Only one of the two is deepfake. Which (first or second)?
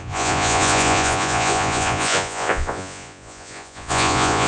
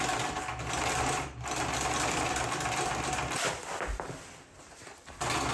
first